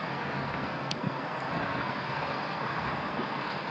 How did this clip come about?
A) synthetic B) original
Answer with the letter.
A